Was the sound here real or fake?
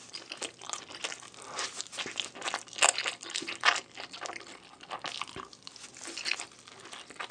real